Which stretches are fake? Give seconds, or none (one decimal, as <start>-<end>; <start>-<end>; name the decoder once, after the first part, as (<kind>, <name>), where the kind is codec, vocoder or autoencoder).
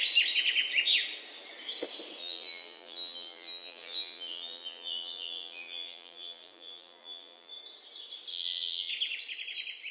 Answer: 2.2-7.5 (vocoder, BigVGAN v2); 8.3-8.9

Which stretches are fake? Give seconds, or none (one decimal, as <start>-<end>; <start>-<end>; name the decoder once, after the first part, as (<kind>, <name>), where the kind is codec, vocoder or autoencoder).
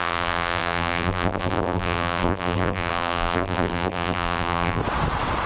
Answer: 0.0-4.8 (vocoder, BigVGAN v2)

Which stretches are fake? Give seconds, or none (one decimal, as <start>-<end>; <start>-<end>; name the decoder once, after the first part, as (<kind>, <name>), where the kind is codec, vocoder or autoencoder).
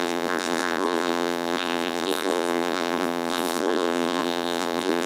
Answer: 0.0-5.1 (vocoder, BigVGAN v2)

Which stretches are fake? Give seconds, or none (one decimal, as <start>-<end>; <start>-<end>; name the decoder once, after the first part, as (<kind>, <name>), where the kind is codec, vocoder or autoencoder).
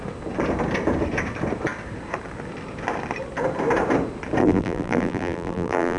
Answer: 4.4-6.0 (vocoder, BigVGAN v2)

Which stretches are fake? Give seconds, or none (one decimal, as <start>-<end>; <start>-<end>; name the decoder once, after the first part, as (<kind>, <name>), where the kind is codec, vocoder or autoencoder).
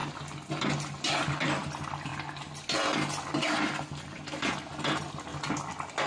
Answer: 1.1-2.1 (vocoder, BigVGAN v2); 4.5-5.3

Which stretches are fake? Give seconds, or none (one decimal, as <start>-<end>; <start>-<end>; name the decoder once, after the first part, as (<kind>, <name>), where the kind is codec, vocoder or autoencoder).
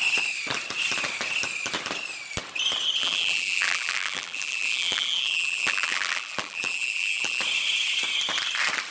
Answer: 3.0-7.4 (vocoder, BigVGAN v2)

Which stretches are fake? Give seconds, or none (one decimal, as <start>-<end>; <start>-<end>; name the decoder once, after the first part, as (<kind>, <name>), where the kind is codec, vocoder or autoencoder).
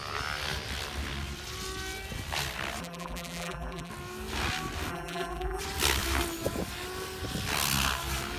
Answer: 2.8-3.9 (vocoder, BigVGAN v2); 4.9-5.6